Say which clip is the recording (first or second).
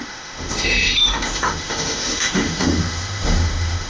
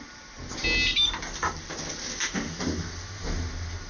second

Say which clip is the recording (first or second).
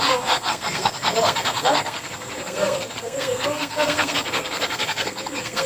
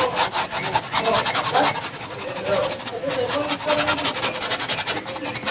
second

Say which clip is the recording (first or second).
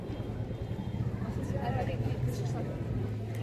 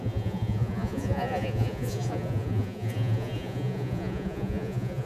first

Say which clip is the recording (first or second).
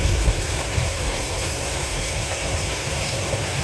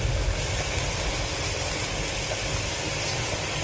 second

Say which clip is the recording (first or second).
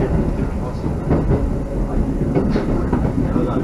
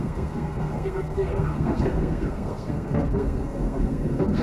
first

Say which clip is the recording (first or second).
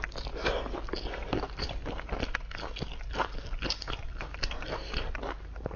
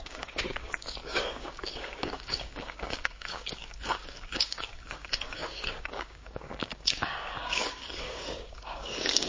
first